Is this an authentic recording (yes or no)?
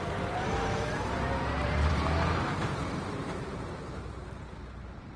no